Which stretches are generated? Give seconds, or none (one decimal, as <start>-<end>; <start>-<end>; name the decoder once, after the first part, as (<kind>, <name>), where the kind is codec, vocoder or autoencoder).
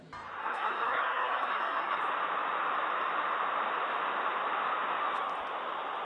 0.4-2.0 (codec, SNAC)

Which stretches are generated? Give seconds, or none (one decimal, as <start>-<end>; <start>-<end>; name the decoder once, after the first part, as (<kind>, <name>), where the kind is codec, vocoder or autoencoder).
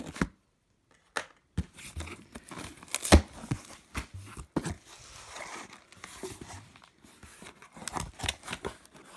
none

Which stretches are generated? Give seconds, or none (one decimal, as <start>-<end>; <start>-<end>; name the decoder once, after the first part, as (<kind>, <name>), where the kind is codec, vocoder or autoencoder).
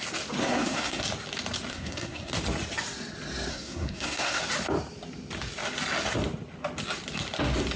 0.4-1.0 (codec, SNAC); 1.7-2.3; 3.5-4.4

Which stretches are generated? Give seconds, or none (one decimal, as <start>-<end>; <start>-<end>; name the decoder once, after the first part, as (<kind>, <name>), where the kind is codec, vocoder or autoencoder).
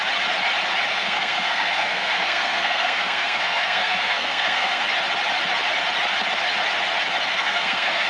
0.9-4.8 (codec, SNAC); 7.3-8.1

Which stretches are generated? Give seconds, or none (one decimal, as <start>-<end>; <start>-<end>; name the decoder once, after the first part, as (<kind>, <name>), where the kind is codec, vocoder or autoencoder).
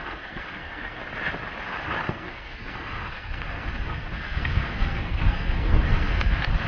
0.0-1.0 (codec, SNAC); 2.1-6.7